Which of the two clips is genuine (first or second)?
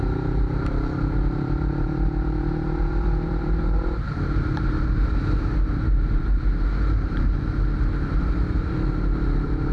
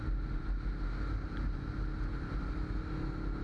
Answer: second